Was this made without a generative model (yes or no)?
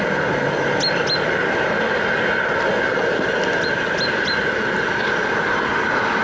yes